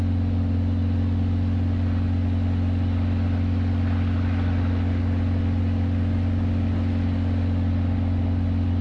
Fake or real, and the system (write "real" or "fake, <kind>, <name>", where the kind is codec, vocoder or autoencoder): real